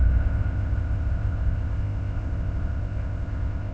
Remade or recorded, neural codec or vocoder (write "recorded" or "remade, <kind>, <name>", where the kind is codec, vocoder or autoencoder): remade, codec, ZipCodec